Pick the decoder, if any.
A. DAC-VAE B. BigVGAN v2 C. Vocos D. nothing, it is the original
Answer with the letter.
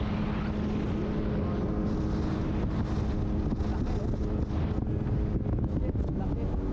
D